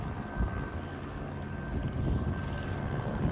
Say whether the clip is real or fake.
real